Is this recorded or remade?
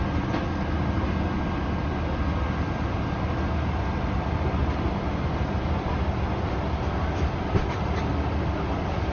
recorded